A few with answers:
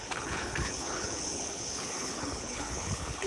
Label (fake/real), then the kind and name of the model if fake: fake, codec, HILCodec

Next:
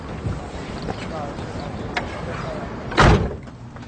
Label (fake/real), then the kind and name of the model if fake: real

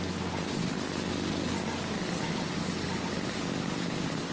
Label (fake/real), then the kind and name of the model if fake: real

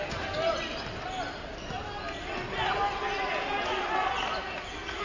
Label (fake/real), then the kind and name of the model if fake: real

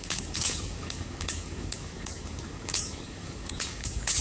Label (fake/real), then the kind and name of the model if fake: fake, codec, DAC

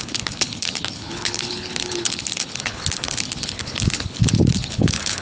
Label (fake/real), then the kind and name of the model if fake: fake, codec, HILCodec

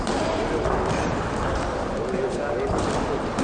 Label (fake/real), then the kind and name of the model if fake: real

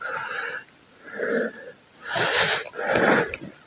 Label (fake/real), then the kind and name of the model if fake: real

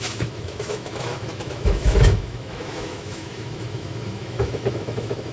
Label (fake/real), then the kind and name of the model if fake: fake, autoencoder, DAC-VAE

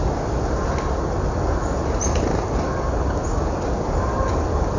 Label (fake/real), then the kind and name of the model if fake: real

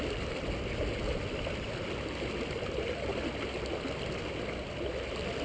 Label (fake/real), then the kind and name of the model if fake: real